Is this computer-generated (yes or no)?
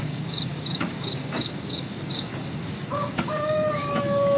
yes